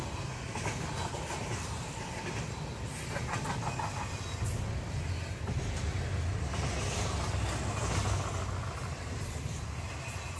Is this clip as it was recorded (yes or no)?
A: yes